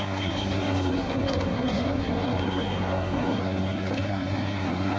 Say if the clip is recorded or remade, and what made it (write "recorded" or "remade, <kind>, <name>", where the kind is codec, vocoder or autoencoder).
remade, codec, SNAC